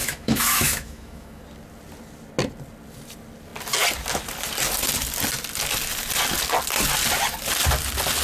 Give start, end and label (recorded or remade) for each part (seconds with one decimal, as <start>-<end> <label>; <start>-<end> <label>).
0.0-1.4 remade; 1.4-8.2 recorded